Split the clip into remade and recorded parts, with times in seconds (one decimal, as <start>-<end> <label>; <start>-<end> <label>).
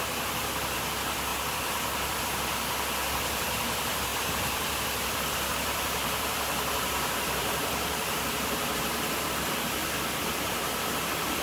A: 0.0-1.3 recorded; 1.3-2.2 remade; 2.2-4.1 recorded; 4.1-8.8 remade; 8.8-9.8 recorded; 9.8-11.4 remade